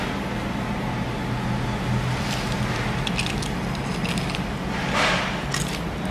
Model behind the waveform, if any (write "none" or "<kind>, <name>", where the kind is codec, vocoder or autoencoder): none